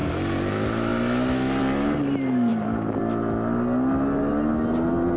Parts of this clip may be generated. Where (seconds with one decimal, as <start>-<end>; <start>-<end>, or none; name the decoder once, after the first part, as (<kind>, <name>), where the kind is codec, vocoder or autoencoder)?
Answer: 2.5-3.0 (vocoder, BigVGAN v2)